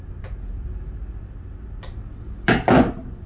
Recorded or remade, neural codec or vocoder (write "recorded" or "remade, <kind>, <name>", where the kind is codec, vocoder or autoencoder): recorded